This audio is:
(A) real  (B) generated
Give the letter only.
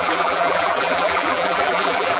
B